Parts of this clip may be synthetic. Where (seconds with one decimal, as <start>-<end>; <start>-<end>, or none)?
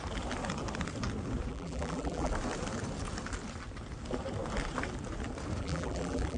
1.5-2.3; 5.6-6.4